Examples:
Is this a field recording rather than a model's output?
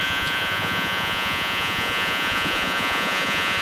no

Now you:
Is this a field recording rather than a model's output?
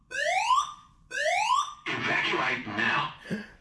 no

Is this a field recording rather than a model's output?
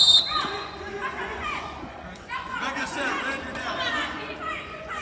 no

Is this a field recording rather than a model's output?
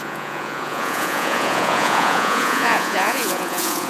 no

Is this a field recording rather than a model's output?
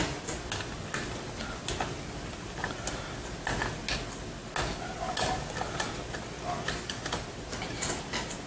yes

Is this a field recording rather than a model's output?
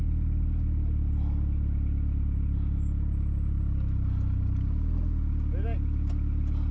yes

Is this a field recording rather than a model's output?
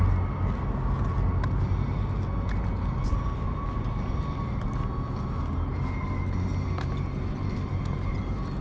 yes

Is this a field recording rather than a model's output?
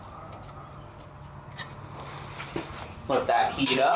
yes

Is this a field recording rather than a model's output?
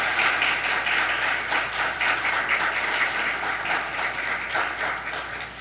yes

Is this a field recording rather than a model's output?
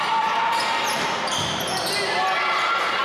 yes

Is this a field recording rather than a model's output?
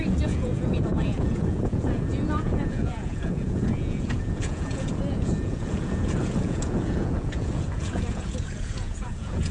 no